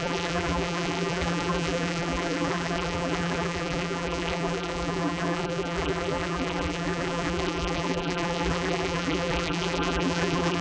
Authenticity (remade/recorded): remade